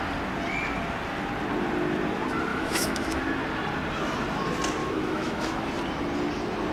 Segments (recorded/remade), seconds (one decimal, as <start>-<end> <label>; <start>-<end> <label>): 0.0-2.5 recorded; 2.5-3.2 remade; 3.2-4.8 recorded; 4.8-5.7 remade; 5.7-6.7 recorded